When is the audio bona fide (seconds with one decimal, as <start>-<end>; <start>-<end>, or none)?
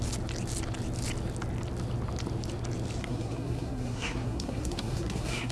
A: 0.0-3.0